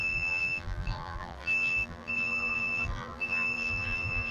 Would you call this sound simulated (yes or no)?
yes